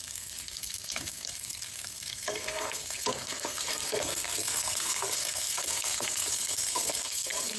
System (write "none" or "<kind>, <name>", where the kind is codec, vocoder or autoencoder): codec, SNAC